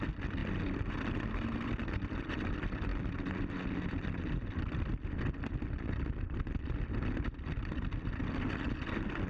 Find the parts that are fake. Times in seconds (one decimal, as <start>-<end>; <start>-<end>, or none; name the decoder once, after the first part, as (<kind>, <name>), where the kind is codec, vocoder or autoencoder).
none